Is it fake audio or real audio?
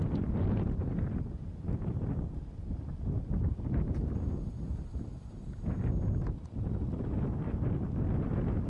real